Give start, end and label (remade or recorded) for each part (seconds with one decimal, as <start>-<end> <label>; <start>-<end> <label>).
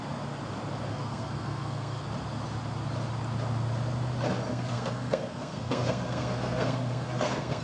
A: 0.0-0.9 recorded; 0.9-2.0 remade; 2.0-4.5 recorded; 4.5-7.6 remade